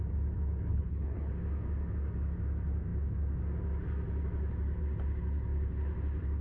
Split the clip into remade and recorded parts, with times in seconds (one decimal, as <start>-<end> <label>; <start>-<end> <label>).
0.0-0.7 recorded; 0.7-1.3 remade; 1.3-6.4 recorded